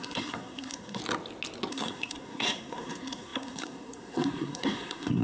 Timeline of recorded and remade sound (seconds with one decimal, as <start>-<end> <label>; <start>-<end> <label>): 0.0-1.0 remade; 1.0-1.7 recorded; 1.7-5.2 remade